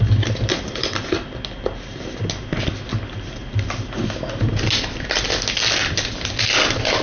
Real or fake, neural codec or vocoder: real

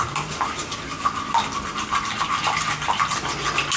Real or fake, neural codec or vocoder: real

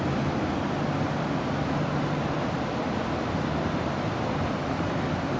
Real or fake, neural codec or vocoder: real